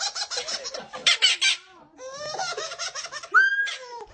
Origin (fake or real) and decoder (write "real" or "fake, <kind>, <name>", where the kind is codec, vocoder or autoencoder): real